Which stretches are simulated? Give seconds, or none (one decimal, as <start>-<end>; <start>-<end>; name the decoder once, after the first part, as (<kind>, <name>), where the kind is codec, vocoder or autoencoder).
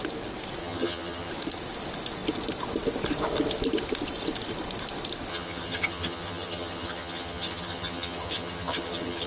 0.6-1.3 (vocoder, HiFi-GAN); 5.3-9.3